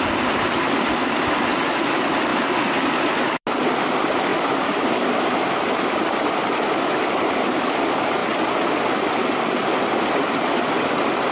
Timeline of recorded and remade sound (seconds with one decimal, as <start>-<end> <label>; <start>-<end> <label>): 0.0-11.3 recorded